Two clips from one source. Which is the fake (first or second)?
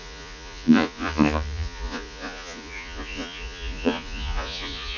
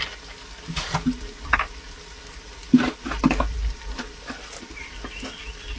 first